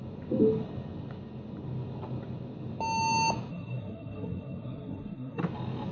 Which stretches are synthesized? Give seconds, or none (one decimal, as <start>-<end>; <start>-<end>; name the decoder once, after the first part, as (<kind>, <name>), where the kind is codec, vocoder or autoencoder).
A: 3.5-5.4 (codec, SNAC)